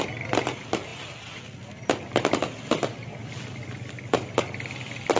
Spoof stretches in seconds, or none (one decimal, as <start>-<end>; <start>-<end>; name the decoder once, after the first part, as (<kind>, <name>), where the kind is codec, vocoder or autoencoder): none